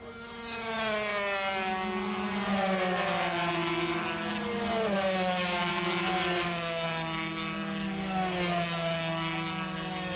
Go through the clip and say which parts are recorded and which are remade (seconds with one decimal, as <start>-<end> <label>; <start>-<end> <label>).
0.0-10.2 recorded